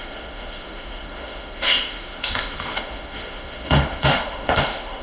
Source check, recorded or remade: remade